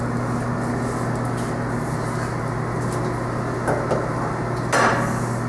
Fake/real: real